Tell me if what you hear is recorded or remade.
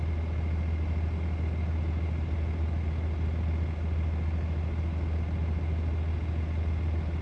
recorded